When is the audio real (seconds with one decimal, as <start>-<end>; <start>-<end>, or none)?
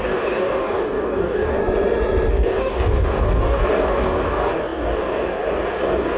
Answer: 1.6-2.3